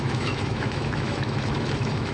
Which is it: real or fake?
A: fake